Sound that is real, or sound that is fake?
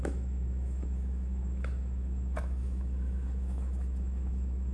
fake